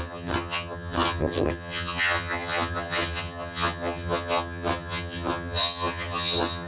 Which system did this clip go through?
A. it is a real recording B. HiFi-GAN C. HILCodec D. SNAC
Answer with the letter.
B